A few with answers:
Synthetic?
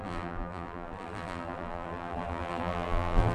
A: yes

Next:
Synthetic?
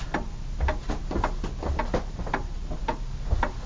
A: no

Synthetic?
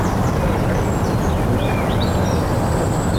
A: no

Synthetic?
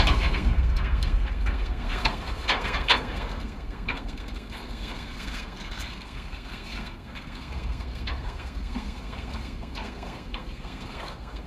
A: yes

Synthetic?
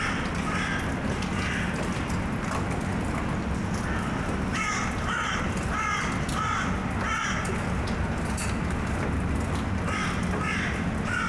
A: no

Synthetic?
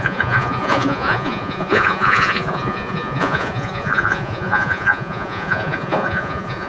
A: yes